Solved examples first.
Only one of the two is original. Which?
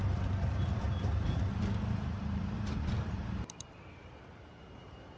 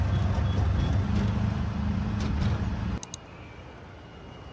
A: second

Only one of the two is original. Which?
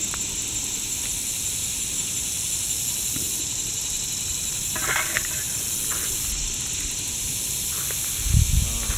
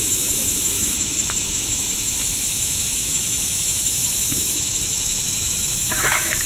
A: first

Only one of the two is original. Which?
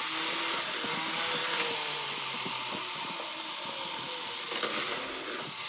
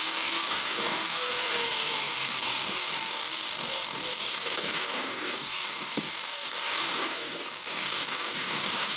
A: first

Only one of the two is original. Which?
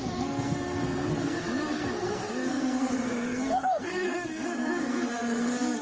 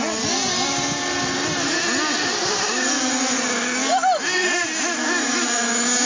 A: second